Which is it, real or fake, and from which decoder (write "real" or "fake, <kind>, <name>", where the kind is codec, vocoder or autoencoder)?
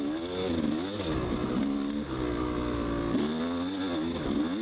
real